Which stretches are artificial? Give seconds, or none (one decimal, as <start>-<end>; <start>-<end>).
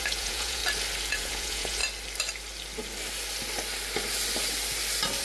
0.0-0.6; 1.1-1.8